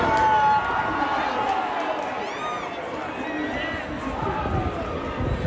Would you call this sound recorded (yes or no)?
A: yes